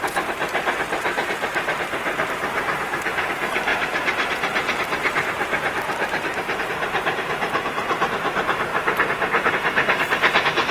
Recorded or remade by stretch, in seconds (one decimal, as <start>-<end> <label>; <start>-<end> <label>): 0.0-8.7 remade; 8.7-9.5 recorded; 9.5-10.7 remade